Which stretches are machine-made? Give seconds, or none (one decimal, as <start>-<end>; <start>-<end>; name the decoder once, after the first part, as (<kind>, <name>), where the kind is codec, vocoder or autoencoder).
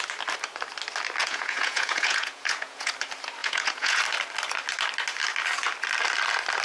1.2-2.9 (vocoder, Vocos); 3.4-4.0